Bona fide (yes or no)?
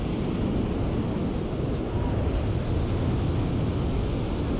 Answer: yes